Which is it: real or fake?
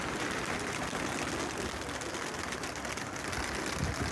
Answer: real